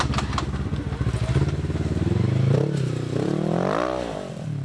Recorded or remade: recorded